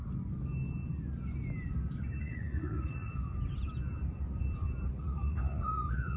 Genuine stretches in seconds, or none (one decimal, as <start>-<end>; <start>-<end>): 0.0-2.2; 3.1-4.9